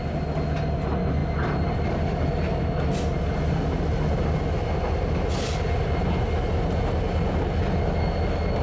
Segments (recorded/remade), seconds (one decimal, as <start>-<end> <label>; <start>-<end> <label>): 0.0-8.6 recorded